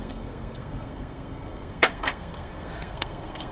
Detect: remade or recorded remade